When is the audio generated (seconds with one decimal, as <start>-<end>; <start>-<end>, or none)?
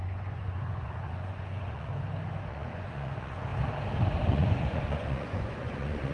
0.0-1.9; 2.5-3.5; 4.3-6.1